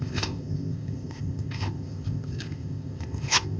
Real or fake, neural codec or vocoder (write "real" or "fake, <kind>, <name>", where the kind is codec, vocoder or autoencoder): fake, codec, ZipCodec